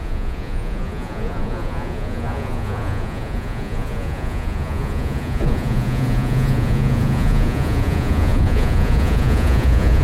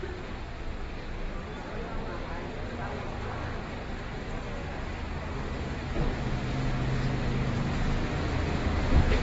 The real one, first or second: second